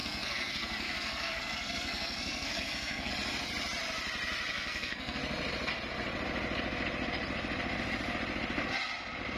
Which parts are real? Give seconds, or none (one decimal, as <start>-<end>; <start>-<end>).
3.1-4.5; 5.2-9.4